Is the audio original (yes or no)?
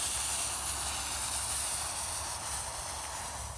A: yes